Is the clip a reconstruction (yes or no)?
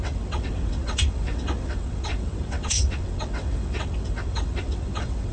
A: yes